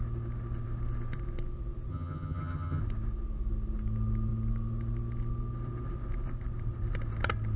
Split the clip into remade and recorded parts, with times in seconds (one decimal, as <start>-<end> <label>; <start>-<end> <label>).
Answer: 0.0-1.9 recorded; 1.9-2.8 remade; 2.8-7.6 recorded